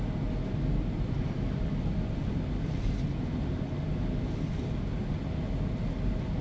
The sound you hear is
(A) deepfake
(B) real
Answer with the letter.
B